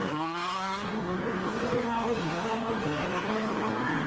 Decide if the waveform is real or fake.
fake